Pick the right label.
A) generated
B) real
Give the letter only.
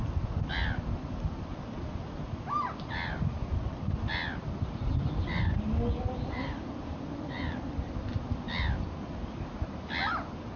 B